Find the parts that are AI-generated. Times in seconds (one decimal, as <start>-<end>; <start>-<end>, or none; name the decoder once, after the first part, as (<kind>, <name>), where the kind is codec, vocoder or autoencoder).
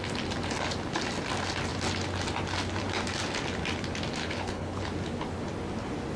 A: 4.2-4.8 (codec, HILCodec)